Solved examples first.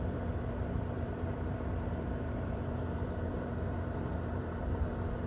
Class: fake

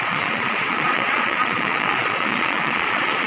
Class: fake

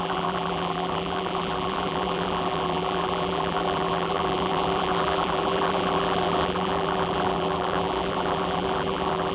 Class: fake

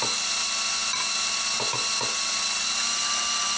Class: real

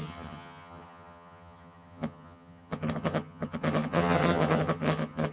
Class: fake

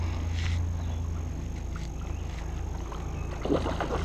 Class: real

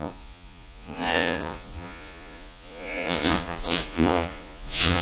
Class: fake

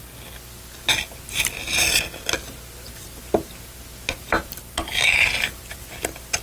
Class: real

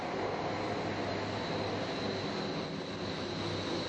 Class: real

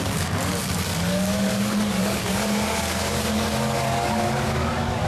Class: fake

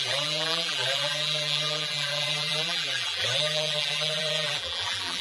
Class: fake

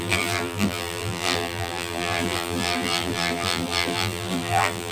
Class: fake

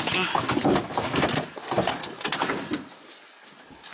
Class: real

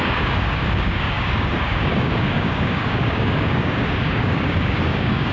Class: fake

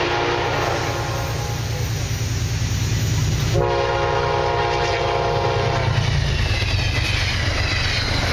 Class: real